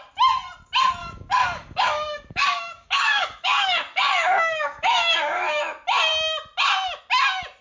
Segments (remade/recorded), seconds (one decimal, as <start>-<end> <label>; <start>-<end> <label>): 0.0-1.0 recorded; 1.0-5.6 remade; 5.6-7.6 recorded